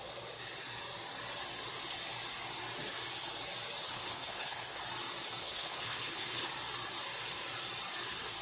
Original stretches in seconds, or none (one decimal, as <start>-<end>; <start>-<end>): 0.0-3.8; 4.8-5.4; 6.5-8.4